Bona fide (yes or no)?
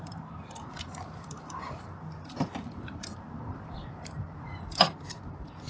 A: no